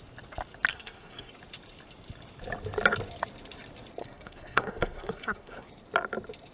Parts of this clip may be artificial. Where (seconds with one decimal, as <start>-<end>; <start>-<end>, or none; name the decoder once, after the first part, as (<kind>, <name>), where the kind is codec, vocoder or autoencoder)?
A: 0.7-1.3 (codec, SNAC); 4.0-5.7